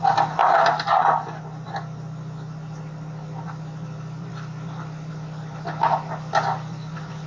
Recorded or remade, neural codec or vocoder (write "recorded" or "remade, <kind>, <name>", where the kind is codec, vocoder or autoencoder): recorded